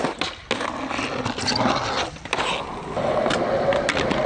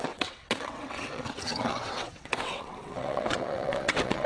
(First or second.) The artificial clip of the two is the second